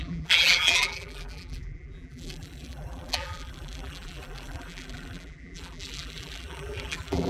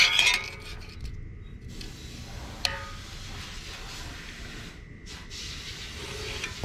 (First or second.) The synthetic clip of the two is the first